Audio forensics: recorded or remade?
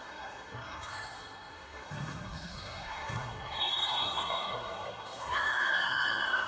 remade